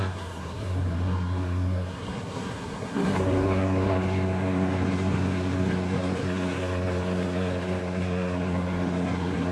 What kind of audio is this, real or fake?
fake